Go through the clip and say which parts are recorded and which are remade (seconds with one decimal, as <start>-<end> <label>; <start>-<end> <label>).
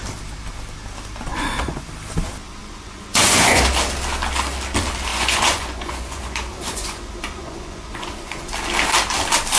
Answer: 0.0-1.3 recorded; 1.3-1.9 remade; 1.9-2.6 recorded; 2.6-3.6 remade; 3.6-5.1 recorded; 5.1-8.5 remade; 8.5-9.6 recorded